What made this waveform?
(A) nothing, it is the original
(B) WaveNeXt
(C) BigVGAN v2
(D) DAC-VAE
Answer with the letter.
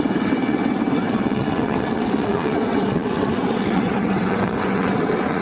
B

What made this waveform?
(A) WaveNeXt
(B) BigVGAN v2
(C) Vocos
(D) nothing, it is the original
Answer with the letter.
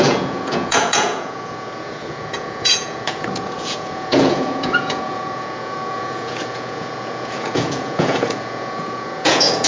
C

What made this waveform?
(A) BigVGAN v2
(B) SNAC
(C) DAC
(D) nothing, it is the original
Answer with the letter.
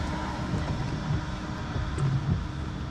D